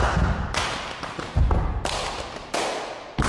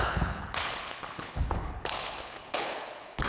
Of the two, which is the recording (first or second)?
first